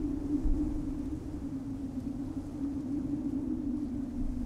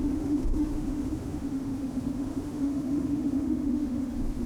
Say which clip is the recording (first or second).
first